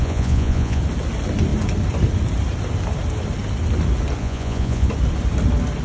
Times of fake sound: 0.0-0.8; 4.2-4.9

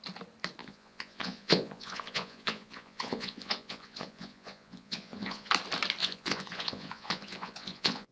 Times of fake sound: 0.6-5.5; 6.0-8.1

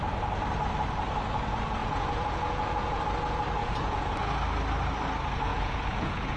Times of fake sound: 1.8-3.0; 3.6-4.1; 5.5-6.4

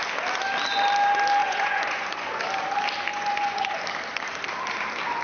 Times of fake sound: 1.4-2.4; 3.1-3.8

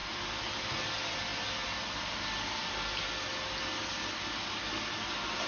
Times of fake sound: none

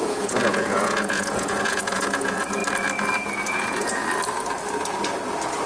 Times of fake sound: 0.0-2.6; 3.5-4.0

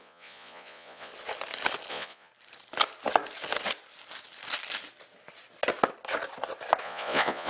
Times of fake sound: 0.0-1.1; 1.9-2.3; 6.8-7.5

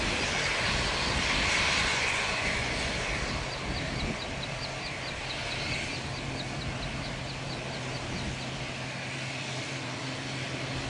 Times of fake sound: 1.9-2.9